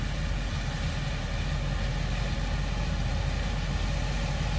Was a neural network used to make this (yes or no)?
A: no